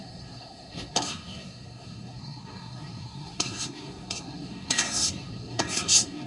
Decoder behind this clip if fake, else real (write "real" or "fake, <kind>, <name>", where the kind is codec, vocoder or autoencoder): fake, codec, SNAC